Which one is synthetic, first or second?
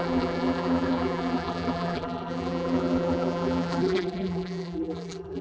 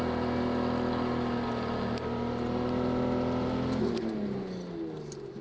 first